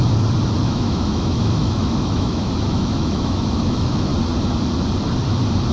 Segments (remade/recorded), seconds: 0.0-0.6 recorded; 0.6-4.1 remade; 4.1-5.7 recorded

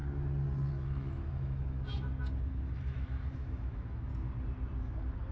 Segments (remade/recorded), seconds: 0.0-0.7 recorded; 0.7-4.1 remade; 4.1-5.3 recorded